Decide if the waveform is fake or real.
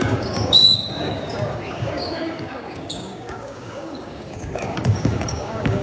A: fake